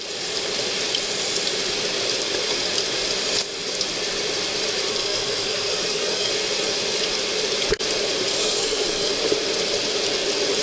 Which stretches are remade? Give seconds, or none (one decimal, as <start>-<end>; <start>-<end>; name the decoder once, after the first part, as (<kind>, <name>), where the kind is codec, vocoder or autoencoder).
4.9-6.3 (codec, SNAC); 8.4-9.1

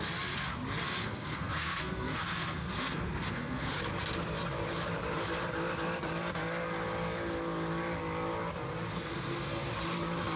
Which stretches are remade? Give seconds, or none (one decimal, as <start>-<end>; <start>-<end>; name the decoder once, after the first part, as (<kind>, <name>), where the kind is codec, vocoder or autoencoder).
1.0-3.8 (codec, SNAC); 8.9-9.7

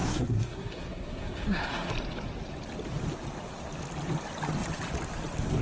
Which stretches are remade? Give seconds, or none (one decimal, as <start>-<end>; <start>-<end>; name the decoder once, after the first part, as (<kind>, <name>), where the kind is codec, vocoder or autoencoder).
0.0-1.9 (codec, SNAC)

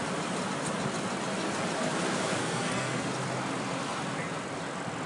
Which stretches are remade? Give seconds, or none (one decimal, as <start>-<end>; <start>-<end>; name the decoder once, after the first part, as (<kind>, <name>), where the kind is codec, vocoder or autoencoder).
2.4-3.0 (codec, SNAC)